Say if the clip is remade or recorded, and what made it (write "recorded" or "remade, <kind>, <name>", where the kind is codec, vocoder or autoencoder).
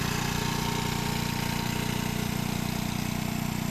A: recorded